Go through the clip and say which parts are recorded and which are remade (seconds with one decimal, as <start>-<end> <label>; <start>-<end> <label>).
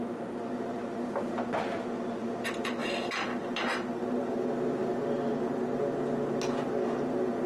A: 0.0-7.5 recorded